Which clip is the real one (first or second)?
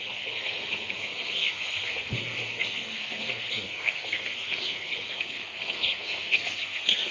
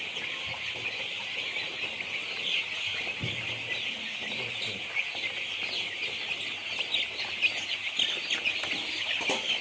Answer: second